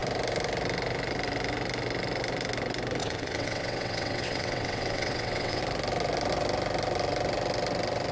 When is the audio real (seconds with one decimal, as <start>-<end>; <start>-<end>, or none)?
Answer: 0.0-3.0; 5.6-8.1